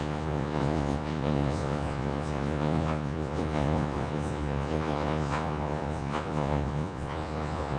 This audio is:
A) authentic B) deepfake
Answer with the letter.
B